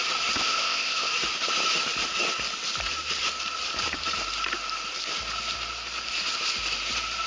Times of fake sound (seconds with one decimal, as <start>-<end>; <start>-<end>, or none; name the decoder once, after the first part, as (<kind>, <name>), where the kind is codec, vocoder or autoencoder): 0.4-1.1 (codec, ZipCodec)